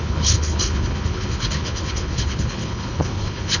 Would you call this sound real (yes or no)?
no